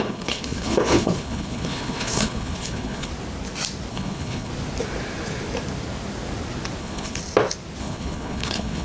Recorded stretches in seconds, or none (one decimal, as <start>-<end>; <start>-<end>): 3.1-3.9; 4.5-6.8; 7.2-7.8